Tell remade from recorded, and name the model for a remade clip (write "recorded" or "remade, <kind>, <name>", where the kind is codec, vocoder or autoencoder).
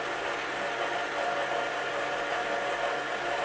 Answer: recorded